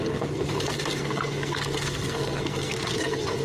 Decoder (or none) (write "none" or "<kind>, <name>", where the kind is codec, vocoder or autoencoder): codec, SNAC